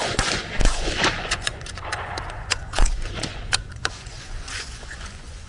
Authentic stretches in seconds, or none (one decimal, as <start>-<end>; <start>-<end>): none